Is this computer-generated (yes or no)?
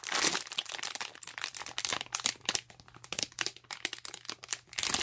no